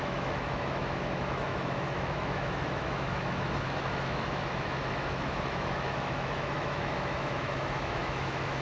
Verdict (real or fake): fake